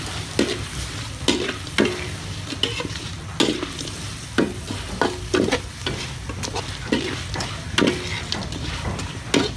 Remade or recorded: recorded